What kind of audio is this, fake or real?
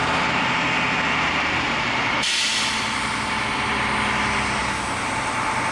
real